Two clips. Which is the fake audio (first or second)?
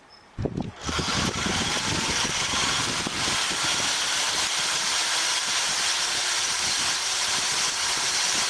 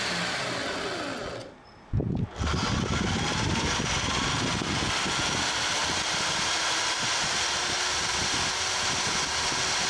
first